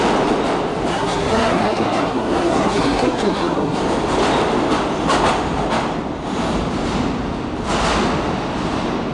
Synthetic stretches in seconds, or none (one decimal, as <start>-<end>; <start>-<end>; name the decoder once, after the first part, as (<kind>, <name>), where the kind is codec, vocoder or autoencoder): 0.9-3.8 (codec, SNAC)